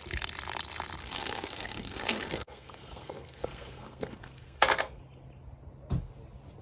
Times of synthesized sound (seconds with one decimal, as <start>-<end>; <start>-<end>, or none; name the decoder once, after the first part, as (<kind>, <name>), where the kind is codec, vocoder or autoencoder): 1.0-5.0 (codec, SNAC)